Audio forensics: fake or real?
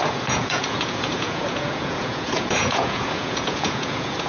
fake